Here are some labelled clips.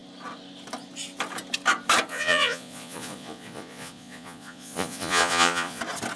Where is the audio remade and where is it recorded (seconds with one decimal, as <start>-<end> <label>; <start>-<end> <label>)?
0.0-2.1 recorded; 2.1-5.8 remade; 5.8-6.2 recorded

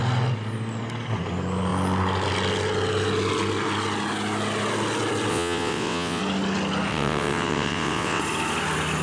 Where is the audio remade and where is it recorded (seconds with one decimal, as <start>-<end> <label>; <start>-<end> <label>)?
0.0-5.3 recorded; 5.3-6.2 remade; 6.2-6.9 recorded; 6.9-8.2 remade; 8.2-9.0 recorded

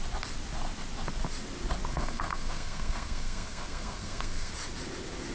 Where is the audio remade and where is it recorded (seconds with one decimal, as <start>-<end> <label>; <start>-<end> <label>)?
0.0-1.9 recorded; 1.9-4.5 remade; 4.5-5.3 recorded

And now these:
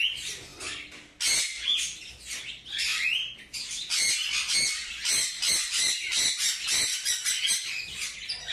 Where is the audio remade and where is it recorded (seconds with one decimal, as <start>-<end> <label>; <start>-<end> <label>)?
0.0-8.5 recorded

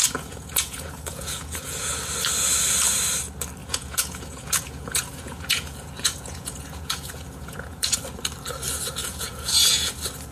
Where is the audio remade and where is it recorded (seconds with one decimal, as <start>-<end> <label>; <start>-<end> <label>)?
0.0-2.0 remade; 2.0-3.6 recorded; 3.6-8.0 remade; 8.0-9.0 recorded; 9.0-9.9 remade; 9.9-10.3 recorded